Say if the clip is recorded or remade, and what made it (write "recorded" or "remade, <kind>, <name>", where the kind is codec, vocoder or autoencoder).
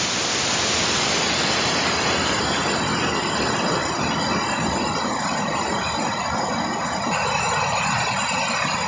recorded